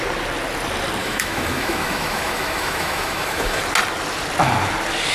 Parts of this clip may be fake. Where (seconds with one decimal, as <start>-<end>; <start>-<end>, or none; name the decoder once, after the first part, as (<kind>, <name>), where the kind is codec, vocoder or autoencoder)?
1.0-3.6 (autoencoder, DAC-VAE)

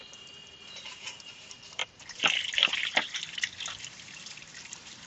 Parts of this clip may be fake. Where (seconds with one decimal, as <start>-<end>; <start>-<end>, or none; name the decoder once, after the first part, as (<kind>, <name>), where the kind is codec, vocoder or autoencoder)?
0.0-5.1 (vocoder, BigVGAN v2)